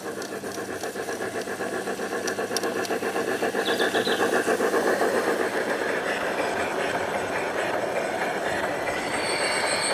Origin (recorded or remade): recorded